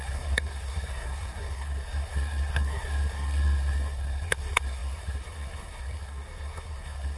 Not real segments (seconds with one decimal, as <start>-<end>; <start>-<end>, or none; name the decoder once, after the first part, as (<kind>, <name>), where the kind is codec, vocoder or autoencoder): 0.0-7.2 (codec, SNAC)